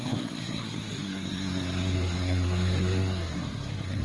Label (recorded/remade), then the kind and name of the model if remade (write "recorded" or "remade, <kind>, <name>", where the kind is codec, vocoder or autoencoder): remade, codec, SNAC